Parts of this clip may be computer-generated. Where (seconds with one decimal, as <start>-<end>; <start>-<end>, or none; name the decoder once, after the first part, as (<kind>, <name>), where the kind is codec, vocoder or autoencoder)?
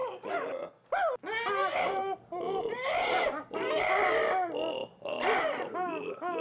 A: 0.0-0.5 (vocoder, BigVGAN v2); 1.6-3.9